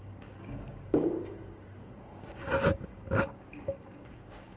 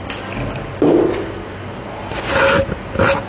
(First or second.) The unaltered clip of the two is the second